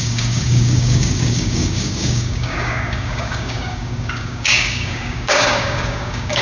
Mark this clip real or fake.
fake